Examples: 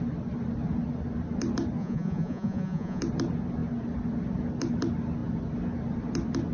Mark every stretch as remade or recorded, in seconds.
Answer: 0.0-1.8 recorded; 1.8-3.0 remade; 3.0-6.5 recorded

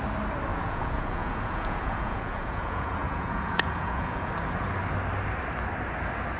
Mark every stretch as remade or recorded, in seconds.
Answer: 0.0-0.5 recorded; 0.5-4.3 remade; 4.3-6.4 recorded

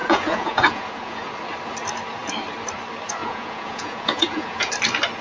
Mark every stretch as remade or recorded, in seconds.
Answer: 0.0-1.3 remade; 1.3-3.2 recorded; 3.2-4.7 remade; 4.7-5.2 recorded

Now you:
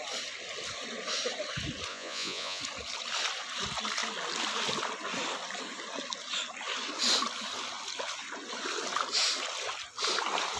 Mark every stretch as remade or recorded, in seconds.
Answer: 0.0-1.9 recorded; 1.9-2.6 remade; 2.6-10.6 recorded